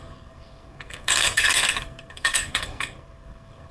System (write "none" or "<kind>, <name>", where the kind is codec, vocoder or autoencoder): codec, SNAC